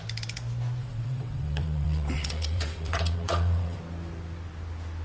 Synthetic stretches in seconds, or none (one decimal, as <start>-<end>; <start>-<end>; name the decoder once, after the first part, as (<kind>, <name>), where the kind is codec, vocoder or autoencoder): 0.8-3.8 (vocoder, WaveNeXt)